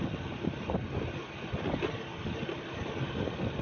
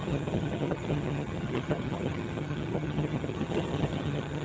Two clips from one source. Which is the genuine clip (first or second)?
first